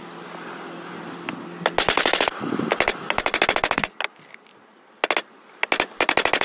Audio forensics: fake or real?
real